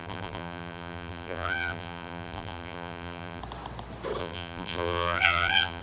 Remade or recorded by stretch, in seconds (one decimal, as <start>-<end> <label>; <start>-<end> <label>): 0.0-3.4 remade; 3.4-4.2 recorded; 4.2-5.8 remade